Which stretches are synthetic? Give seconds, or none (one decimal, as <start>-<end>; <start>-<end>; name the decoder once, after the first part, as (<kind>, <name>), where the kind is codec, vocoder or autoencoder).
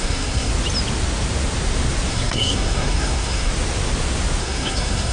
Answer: 0.0-0.5 (codec, SNAC); 2.1-3.5; 4.4-5.1